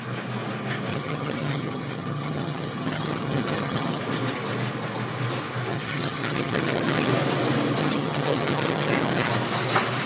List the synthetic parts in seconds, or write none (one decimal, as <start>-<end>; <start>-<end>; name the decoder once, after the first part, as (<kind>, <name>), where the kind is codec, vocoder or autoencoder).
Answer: 0.9-4.0 (vocoder, HiFi-GAN); 5.7-7.1; 7.8-9.3